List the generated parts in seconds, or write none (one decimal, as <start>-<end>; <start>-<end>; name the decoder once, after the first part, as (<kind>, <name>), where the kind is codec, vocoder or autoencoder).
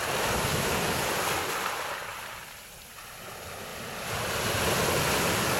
0.5-1.1 (autoencoder, DAC-VAE)